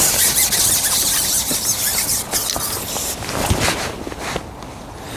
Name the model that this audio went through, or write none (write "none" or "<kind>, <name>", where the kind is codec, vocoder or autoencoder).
none